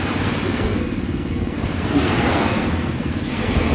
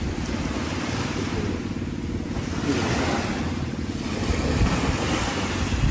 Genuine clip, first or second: second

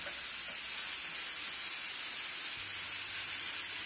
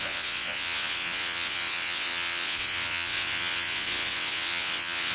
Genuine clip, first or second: first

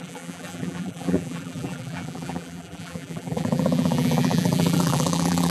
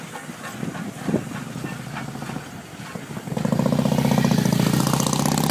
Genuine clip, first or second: second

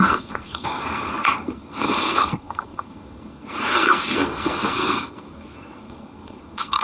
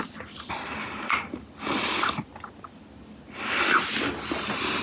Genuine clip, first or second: second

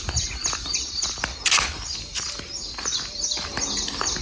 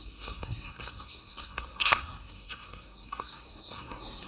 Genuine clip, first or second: first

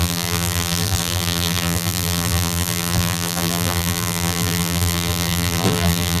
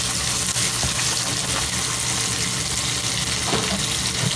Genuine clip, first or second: second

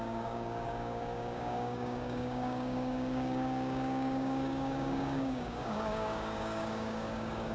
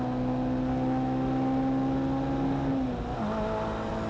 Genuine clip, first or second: second